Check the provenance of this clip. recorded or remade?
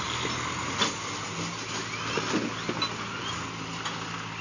recorded